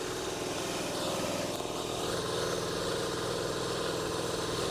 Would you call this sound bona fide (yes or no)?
yes